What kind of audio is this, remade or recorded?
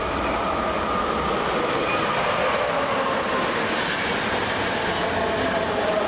recorded